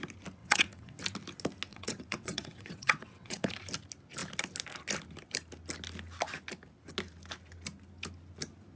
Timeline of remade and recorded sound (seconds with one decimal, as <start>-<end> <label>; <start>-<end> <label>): 0.0-0.4 recorded; 0.4-1.0 remade; 1.0-1.7 recorded; 1.7-3.5 remade; 3.5-8.8 recorded